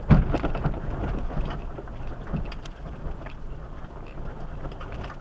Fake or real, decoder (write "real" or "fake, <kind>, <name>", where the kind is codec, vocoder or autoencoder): real